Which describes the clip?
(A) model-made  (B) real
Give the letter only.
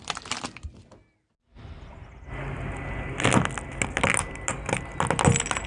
B